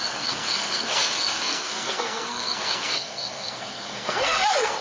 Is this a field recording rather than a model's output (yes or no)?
no